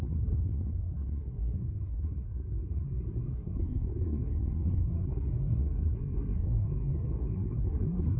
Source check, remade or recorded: remade